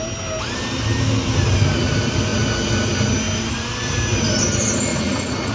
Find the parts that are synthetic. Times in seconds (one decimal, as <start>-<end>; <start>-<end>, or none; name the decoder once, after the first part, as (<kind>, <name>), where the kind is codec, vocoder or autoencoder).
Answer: 4.9-5.5 (vocoder, Vocos)